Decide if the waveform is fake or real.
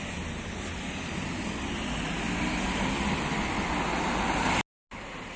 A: real